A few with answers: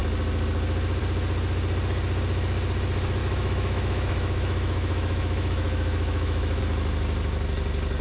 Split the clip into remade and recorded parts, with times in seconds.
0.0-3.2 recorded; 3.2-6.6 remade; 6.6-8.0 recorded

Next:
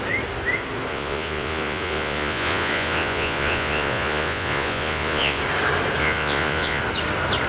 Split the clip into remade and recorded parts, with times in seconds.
0.0-0.9 recorded; 0.9-5.4 remade; 5.4-6.0 recorded; 6.0-6.8 remade; 6.8-7.5 recorded

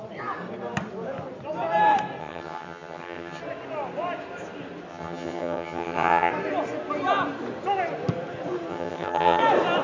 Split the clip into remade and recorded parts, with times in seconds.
0.0-2.2 recorded; 2.2-3.4 remade; 3.4-4.9 recorded; 4.9-6.3 remade; 6.3-8.7 recorded; 8.7-9.4 remade; 9.4-9.8 recorded

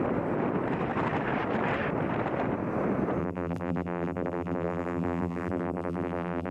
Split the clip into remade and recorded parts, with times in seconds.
0.0-3.2 recorded; 3.2-6.5 remade

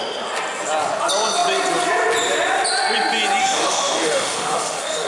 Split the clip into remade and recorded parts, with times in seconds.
0.0-3.4 recorded; 3.4-5.1 remade

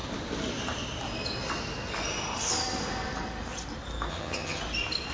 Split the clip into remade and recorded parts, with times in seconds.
0.0-4.1 recorded; 4.1-4.6 remade; 4.6-5.1 recorded

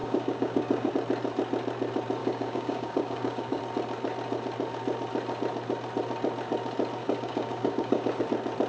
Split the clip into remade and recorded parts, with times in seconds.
0.0-0.9 remade; 0.9-2.2 recorded; 2.2-3.6 remade; 3.6-7.0 recorded; 7.0-8.2 remade; 8.2-8.7 recorded